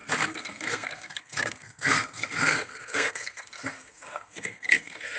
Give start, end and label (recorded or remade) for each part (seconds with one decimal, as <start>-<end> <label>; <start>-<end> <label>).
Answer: 0.0-5.2 remade